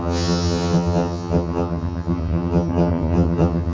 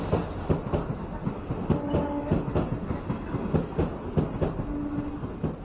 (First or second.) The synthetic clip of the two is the first